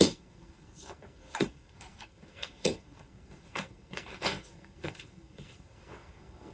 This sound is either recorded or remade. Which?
remade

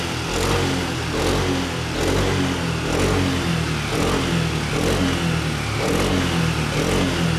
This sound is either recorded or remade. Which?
recorded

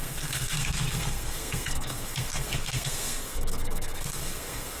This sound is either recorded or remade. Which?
remade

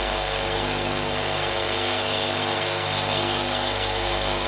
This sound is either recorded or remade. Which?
remade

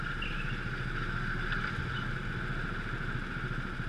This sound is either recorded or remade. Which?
recorded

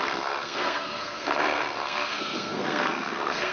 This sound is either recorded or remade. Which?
remade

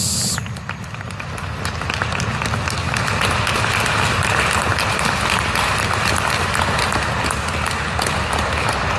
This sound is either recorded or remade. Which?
recorded